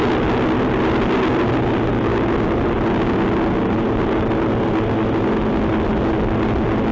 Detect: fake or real real